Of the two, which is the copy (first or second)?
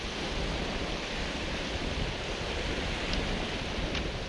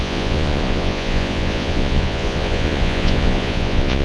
second